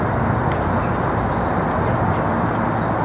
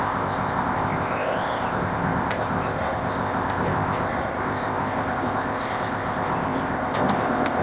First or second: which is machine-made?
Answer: second